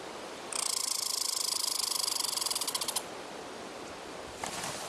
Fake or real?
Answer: fake